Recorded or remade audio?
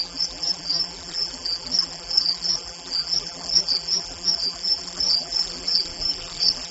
remade